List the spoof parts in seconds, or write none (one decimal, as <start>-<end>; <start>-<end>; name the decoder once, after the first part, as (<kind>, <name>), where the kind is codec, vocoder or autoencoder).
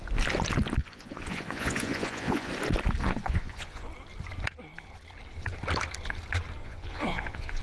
0.8-2.5 (vocoder, Vocos); 3.0-3.9; 6.6-7.6